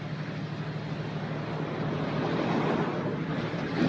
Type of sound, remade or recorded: recorded